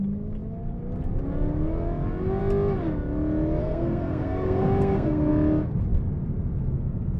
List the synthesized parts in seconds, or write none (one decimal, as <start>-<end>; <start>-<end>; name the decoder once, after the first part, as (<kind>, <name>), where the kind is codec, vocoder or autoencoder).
3.6-5.3 (codec, SNAC)